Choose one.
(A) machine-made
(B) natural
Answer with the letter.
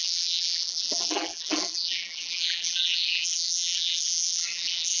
A